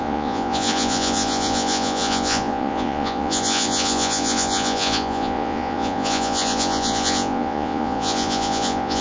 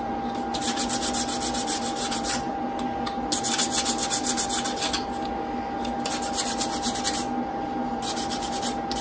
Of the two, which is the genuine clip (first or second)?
second